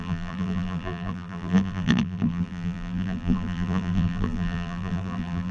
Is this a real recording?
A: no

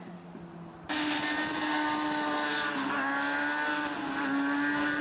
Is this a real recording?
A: yes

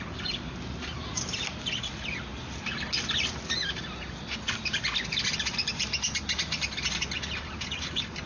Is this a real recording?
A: yes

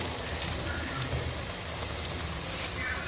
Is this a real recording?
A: yes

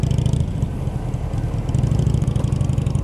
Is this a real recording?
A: yes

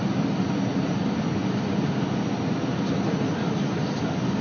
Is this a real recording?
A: yes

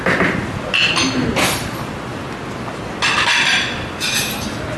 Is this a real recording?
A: yes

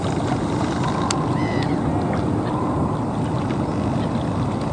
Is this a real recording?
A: yes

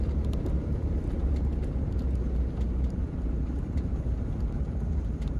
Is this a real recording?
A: no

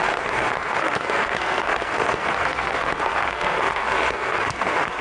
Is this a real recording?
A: no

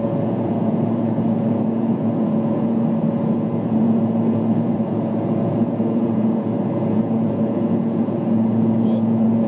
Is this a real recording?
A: no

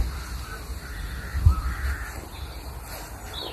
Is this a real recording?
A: yes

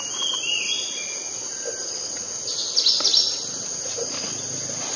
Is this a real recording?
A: yes